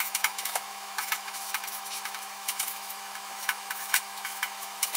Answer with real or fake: fake